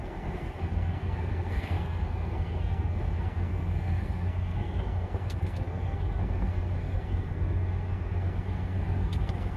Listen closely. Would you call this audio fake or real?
fake